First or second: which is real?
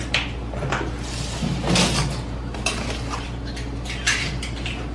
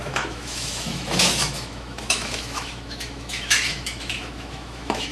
first